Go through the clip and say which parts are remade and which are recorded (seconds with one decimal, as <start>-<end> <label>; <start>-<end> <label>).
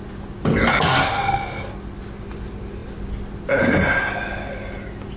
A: 0.0-1.1 recorded; 1.1-1.7 remade; 1.7-5.2 recorded